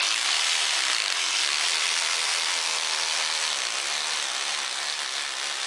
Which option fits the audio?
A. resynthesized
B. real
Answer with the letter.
B